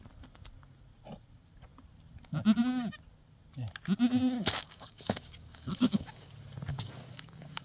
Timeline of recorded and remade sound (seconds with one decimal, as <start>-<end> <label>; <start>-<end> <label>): 0.0-4.4 recorded; 4.4-6.3 remade; 6.3-6.7 recorded; 6.7-7.6 remade